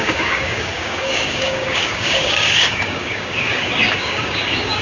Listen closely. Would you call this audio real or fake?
fake